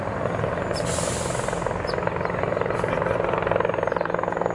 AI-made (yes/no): no